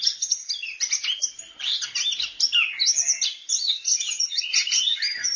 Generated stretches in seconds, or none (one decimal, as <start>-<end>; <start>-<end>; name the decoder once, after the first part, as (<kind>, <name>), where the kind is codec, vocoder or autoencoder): 0.0-0.4 (vocoder, HiFi-GAN); 3.6-5.4